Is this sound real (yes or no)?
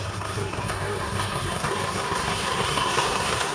no